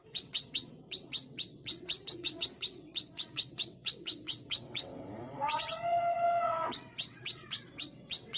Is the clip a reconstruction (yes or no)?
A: yes